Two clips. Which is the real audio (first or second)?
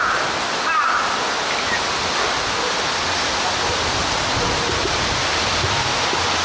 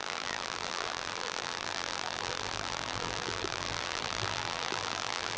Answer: first